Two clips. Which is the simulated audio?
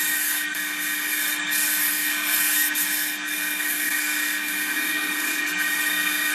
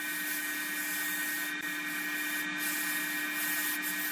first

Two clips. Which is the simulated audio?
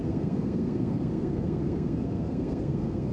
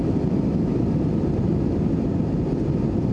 first